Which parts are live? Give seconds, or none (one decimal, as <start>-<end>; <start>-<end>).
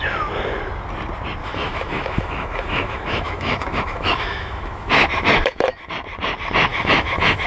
0.0-1.4; 5.9-6.7